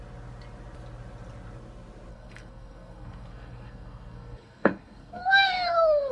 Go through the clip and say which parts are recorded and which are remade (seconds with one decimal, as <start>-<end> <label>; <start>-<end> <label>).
0.0-2.1 recorded; 2.1-6.1 remade